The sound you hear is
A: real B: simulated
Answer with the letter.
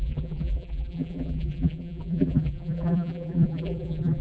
B